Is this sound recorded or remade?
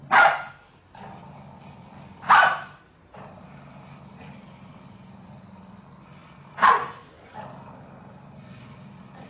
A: recorded